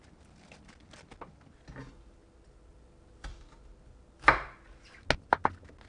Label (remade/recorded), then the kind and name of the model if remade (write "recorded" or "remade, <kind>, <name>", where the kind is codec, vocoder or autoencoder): recorded